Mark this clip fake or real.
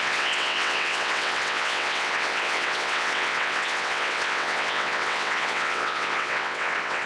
fake